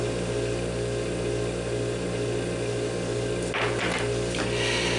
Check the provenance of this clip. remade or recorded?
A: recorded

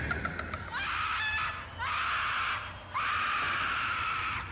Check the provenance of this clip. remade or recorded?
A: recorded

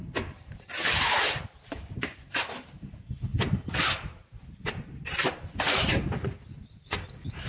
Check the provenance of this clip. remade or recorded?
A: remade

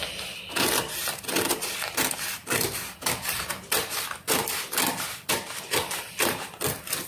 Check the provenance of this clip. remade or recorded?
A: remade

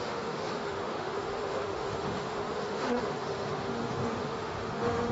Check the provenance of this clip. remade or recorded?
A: remade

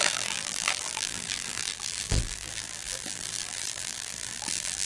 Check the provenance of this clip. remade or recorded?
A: remade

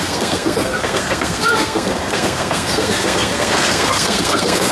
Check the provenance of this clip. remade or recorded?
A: remade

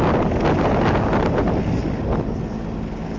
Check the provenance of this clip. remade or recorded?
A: recorded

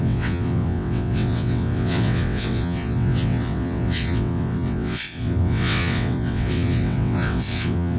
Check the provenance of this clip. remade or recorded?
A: remade